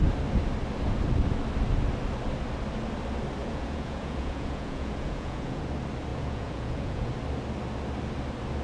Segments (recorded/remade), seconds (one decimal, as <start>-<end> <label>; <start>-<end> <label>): 0.0-3.4 recorded; 3.4-5.6 remade; 5.6-6.1 recorded; 6.1-7.1 remade; 7.1-8.6 recorded